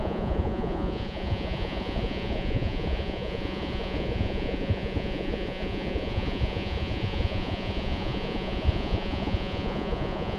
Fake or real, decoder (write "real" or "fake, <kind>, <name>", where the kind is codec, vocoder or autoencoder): fake, vocoder, Vocos